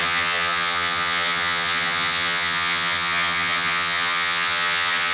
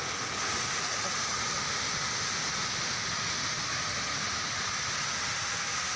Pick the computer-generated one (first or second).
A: first